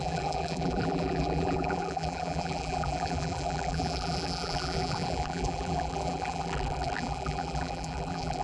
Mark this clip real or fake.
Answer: fake